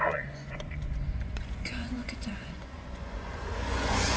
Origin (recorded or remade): remade